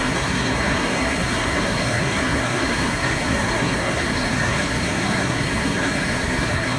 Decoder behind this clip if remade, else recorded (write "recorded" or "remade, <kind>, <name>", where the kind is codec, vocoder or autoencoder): remade, codec, SNAC